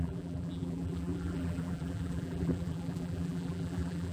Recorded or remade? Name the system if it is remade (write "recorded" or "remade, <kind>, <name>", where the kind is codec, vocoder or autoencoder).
remade, vocoder, BigVGAN v2